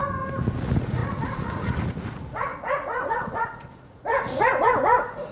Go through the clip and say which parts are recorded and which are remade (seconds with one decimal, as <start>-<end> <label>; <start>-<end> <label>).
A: 0.0-0.6 recorded; 0.6-5.3 remade